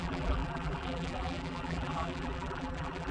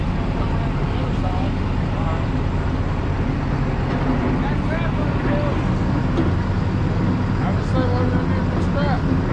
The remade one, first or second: first